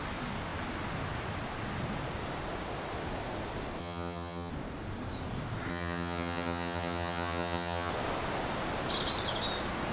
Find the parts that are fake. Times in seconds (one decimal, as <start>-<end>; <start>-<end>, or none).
3.8-4.5; 5.7-7.9